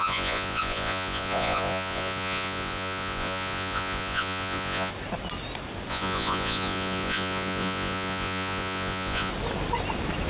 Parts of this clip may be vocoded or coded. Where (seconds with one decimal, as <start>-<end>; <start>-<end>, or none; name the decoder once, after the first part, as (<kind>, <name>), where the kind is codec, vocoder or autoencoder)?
0.0-4.9 (vocoder, Vocos); 5.9-9.3